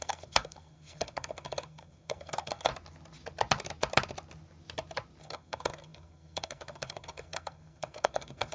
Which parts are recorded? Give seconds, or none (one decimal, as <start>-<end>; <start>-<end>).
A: 2.7-5.2